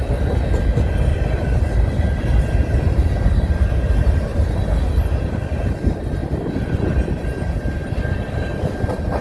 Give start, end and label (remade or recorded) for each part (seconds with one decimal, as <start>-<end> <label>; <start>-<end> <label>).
0.0-1.1 recorded; 1.1-3.1 remade; 3.1-4.3 recorded; 4.3-5.2 remade; 5.2-6.2 recorded; 6.2-6.8 remade; 6.8-7.8 recorded; 7.8-8.4 remade; 8.4-9.2 recorded